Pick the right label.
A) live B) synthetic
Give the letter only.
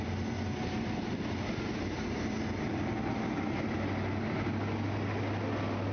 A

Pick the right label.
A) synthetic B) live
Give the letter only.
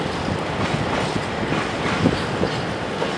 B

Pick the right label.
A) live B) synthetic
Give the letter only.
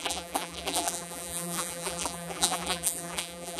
B